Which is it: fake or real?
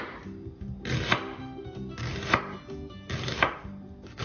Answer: real